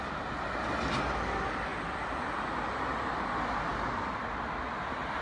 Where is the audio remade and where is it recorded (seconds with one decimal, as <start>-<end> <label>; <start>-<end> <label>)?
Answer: 0.0-5.2 recorded